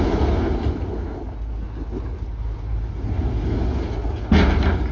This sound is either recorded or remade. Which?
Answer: recorded